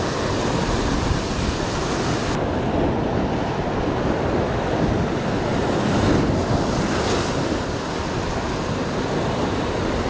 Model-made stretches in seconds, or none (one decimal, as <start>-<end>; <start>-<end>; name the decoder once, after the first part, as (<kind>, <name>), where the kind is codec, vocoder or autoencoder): none